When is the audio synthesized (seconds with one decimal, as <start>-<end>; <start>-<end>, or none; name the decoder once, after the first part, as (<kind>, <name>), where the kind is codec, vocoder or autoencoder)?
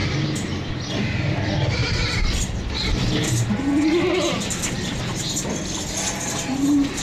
0.0-0.7 (vocoder, BigVGAN v2)